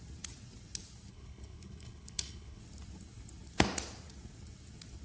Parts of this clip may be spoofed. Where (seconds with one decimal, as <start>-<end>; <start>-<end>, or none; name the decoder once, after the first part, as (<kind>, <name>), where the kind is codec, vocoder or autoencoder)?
1.1-2.6 (codec, HILCodec)